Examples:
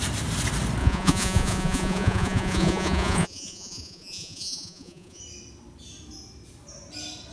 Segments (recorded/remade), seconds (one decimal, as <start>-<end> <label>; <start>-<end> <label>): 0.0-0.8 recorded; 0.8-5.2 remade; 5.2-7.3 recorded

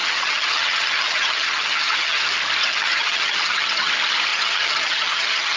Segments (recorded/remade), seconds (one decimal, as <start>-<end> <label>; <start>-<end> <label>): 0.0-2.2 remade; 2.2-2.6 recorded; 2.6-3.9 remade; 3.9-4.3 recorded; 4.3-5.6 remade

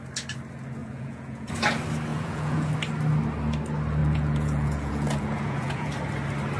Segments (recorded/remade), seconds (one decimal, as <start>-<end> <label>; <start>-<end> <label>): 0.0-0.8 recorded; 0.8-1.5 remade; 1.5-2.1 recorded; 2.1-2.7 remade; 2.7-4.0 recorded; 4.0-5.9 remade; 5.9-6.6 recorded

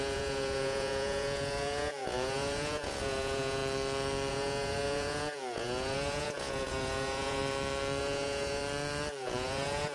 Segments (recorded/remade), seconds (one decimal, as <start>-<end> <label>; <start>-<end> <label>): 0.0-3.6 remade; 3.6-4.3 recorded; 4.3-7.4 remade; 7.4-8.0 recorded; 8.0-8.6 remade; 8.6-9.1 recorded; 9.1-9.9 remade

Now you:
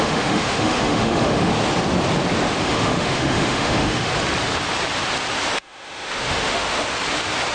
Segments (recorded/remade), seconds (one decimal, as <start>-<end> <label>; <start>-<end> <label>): 0.0-1.5 remade; 1.5-2.6 recorded; 2.6-4.1 remade; 4.1-5.5 recorded; 5.5-6.9 remade; 6.9-7.5 recorded

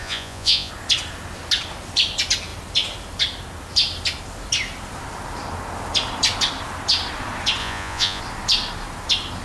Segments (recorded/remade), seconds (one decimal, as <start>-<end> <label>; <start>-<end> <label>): 0.0-0.7 remade; 0.7-7.6 recorded; 7.6-8.2 remade; 8.2-9.4 recorded